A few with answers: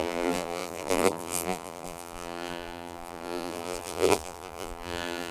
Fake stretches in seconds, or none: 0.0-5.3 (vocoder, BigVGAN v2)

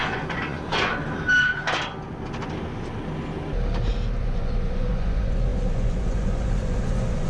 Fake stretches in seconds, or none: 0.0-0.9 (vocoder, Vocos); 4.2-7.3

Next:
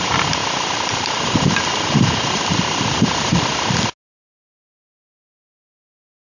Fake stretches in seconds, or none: 0.4-2.4 (vocoder, BigVGAN v2)

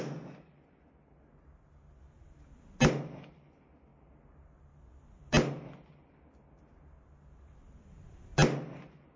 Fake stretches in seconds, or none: none